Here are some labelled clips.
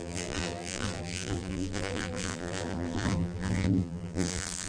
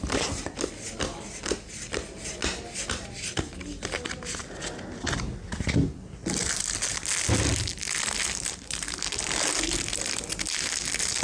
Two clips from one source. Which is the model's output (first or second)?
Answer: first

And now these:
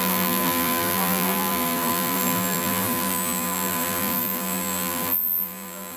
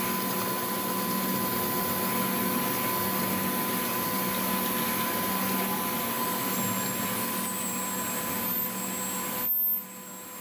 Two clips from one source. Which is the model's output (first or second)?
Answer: first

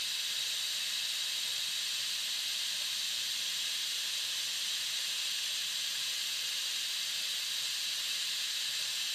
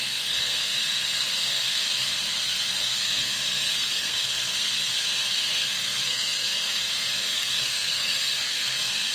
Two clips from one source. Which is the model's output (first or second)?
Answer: second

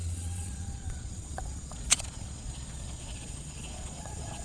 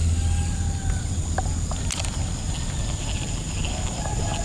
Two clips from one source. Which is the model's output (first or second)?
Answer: first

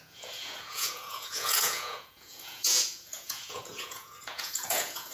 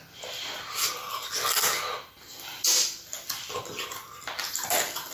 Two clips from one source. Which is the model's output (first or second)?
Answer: first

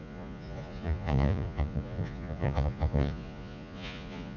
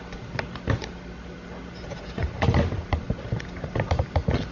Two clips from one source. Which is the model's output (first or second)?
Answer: first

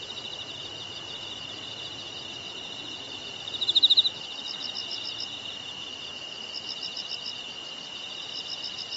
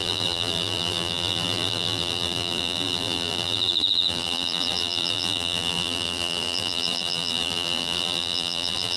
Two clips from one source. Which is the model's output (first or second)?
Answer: second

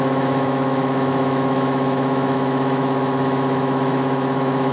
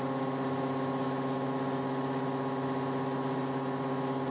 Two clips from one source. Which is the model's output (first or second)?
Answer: first